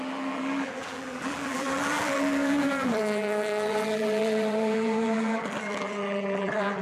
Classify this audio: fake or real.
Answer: fake